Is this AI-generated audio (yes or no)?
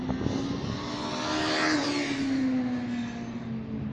no